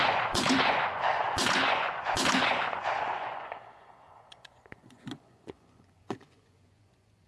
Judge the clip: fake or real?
fake